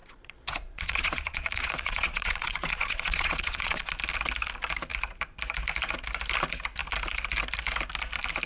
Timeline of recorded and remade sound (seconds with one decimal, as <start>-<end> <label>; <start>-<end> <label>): 0.0-3.9 remade; 3.9-8.5 recorded